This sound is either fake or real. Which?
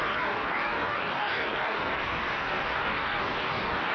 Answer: fake